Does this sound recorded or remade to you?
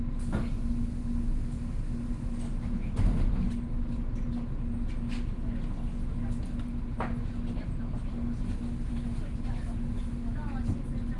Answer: recorded